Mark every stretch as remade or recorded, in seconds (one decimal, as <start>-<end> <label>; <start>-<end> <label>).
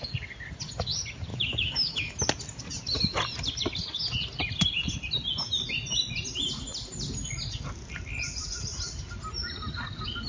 0.0-1.3 recorded; 1.3-2.2 remade; 2.2-10.3 recorded